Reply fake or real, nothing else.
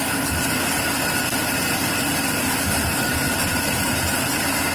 real